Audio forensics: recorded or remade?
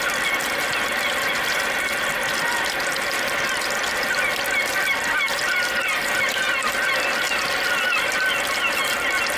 recorded